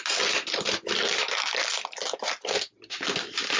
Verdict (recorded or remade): recorded